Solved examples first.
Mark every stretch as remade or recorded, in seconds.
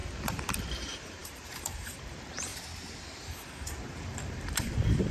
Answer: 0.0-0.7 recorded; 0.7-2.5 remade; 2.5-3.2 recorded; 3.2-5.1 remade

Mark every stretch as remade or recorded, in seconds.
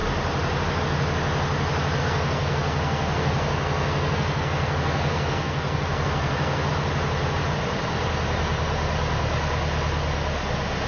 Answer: 0.0-2.0 recorded; 2.0-6.7 remade; 6.7-10.9 recorded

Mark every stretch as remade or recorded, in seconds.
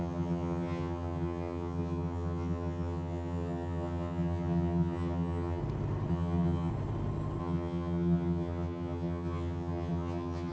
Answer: 0.0-5.6 remade; 5.6-6.1 recorded; 6.1-6.7 remade; 6.7-7.4 recorded; 7.4-10.5 remade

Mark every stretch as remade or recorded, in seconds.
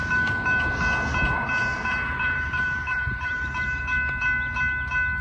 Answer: 0.0-1.6 recorded; 1.6-3.8 remade; 3.8-5.2 recorded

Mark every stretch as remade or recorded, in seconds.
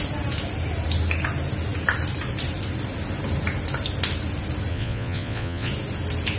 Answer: 0.0-4.7 recorded; 4.7-5.7 remade; 5.7-6.4 recorded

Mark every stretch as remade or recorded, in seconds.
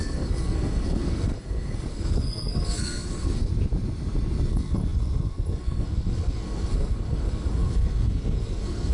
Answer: 0.0-3.5 remade; 3.5-4.5 recorded; 4.5-8.9 remade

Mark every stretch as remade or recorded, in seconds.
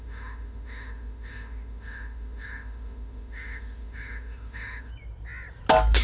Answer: 0.0-4.9 remade; 4.9-6.0 recorded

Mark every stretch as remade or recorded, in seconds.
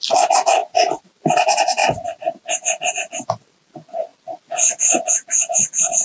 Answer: 0.0-0.6 recorded; 0.6-1.2 remade; 1.2-6.0 recorded